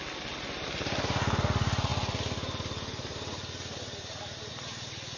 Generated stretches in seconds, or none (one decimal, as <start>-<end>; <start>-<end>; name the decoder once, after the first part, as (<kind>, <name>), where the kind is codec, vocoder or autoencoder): none